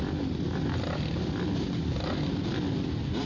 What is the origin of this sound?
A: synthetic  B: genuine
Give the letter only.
B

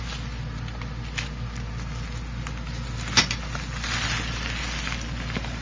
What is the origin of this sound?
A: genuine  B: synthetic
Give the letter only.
A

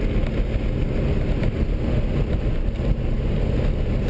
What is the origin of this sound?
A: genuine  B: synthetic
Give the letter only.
A